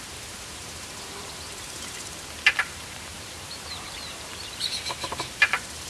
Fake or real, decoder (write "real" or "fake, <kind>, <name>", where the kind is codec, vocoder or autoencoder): fake, vocoder, BigVGAN v2